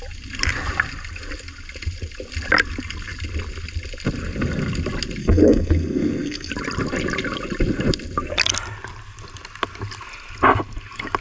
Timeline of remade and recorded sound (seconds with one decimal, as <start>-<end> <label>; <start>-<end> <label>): 0.0-5.2 recorded; 5.2-6.5 remade; 6.5-11.2 recorded